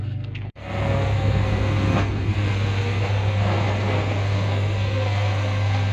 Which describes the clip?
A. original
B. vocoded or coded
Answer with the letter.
B